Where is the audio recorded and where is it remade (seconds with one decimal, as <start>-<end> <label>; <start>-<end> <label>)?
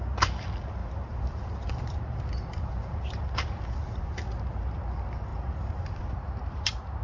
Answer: 0.0-0.8 recorded; 0.8-4.0 remade; 4.0-5.3 recorded; 5.3-7.0 remade